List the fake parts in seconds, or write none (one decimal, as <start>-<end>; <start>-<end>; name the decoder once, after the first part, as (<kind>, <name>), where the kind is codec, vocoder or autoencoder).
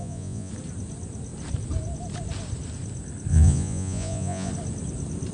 0.0-0.5 (vocoder, Vocos); 3.3-4.5